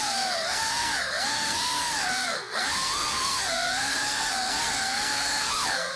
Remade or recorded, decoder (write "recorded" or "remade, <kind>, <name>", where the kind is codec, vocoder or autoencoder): remade, codec, SNAC